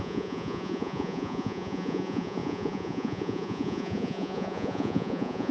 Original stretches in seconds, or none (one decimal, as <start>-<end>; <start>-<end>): none